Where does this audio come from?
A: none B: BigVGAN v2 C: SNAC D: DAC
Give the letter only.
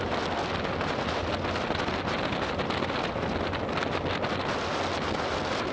A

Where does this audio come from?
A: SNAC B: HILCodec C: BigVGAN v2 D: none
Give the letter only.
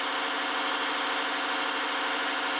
D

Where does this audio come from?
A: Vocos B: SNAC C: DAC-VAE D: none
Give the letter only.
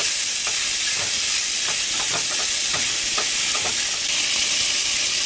D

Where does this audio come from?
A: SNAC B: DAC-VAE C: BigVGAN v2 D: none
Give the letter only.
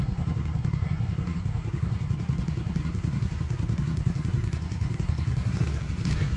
A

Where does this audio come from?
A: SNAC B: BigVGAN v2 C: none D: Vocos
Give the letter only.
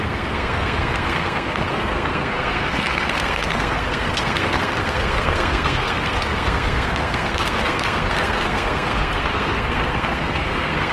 A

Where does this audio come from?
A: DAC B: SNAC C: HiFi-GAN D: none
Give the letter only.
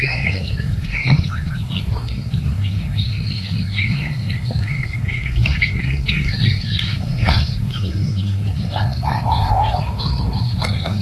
B